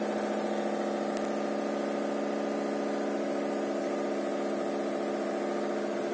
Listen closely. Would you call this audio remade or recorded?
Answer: recorded